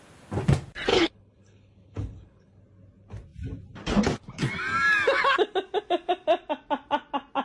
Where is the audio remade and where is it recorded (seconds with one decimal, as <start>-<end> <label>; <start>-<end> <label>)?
0.0-0.9 recorded; 0.9-2.6 remade; 2.6-7.4 recorded